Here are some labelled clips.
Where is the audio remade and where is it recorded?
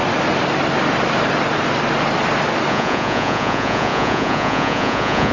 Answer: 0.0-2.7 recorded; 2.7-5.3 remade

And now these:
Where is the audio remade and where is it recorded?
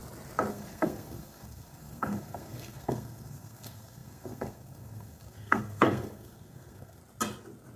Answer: 0.0-0.5 recorded; 0.5-7.0 remade; 7.0-7.8 recorded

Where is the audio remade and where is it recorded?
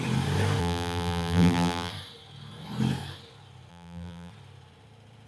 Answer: 0.0-0.6 recorded; 0.6-1.9 remade; 1.9-3.7 recorded; 3.7-4.3 remade; 4.3-5.3 recorded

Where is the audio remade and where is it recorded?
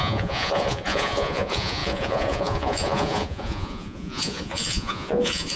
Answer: 0.0-5.6 remade